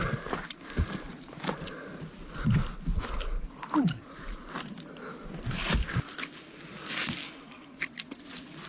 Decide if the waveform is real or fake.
real